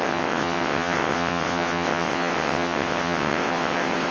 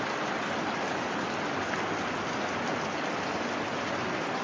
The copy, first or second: first